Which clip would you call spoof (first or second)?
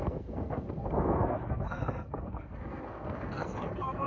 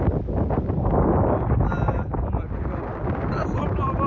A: first